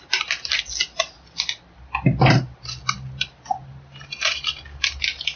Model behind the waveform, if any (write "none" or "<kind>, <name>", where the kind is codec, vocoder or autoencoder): none